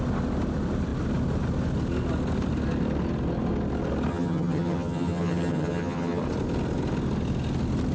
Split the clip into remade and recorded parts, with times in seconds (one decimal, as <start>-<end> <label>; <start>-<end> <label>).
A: 0.0-4.1 recorded; 4.1-6.2 remade; 6.2-7.9 recorded